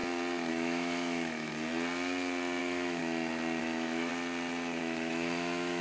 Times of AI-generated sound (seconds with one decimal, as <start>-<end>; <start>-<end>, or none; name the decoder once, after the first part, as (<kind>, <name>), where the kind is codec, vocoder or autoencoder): 0.5-1.5 (autoencoder, DAC-VAE); 2.6-3.0; 3.6-4.1; 4.8-5.8